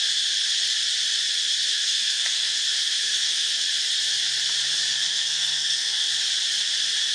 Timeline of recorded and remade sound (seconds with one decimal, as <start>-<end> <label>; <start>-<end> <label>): 0.0-1.7 recorded; 1.7-3.5 remade; 3.5-4.9 recorded; 4.9-6.1 remade; 6.1-7.1 recorded